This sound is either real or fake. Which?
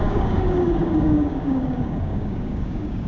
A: fake